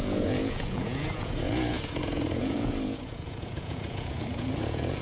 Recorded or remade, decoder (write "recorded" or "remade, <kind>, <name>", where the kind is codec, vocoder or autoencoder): remade, vocoder, Vocos